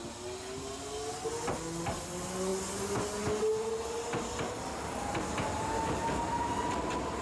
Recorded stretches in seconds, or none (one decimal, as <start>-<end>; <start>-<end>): 0.0-7.2